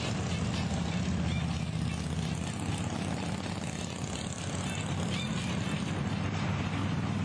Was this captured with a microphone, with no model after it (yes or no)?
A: yes